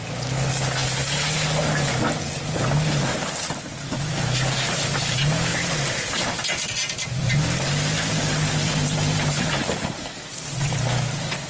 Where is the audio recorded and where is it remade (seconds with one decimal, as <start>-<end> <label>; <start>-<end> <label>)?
0.0-5.5 recorded; 5.5-7.7 remade; 7.7-8.6 recorded; 8.6-10.7 remade; 10.7-11.5 recorded